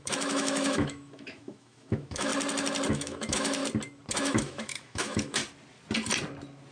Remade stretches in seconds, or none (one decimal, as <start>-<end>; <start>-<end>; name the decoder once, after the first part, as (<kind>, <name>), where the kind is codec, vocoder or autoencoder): 0.0-2.3 (autoencoder, DAC-VAE); 2.9-3.6; 4.1-5.4

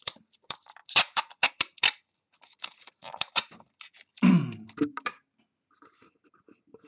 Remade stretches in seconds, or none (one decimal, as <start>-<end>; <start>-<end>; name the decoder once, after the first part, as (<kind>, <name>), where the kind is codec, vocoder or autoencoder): none